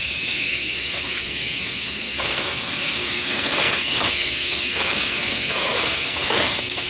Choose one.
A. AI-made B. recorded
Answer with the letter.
A